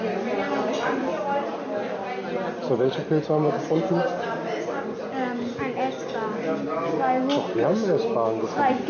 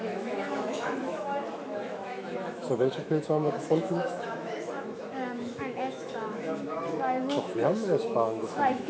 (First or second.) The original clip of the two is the first